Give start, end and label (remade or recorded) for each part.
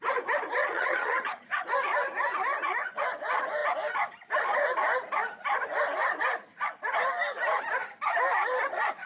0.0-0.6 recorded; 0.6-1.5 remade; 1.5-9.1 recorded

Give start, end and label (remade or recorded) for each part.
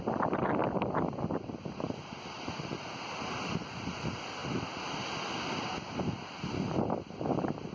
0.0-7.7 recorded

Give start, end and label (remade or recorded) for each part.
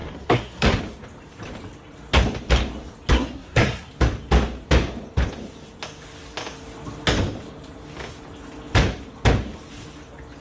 0.0-0.8 remade; 0.8-3.1 recorded; 3.1-3.9 remade; 3.9-10.4 recorded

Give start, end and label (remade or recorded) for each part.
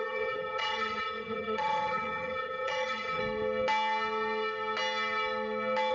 0.0-3.2 remade; 3.2-5.9 recorded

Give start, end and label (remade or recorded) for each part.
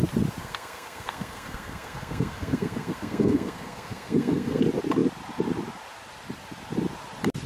0.0-0.4 recorded; 0.4-4.6 remade; 4.6-7.5 recorded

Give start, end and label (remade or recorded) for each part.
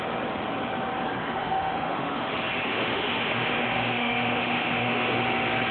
0.0-1.2 recorded; 1.2-2.2 remade; 2.2-2.7 recorded; 2.7-5.1 remade; 5.1-5.7 recorded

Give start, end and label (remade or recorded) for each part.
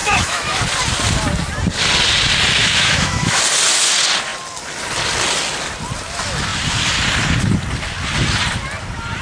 0.0-0.6 remade; 0.6-2.6 recorded; 2.6-3.4 remade; 3.4-9.2 recorded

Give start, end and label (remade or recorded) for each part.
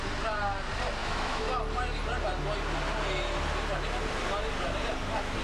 0.0-1.0 recorded; 1.0-1.5 remade; 1.5-5.4 recorded